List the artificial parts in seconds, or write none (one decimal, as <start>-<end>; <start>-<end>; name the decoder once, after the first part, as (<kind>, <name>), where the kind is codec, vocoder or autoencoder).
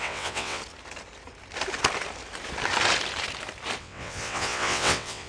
0.0-0.6 (vocoder, WaveNeXt); 3.8-5.3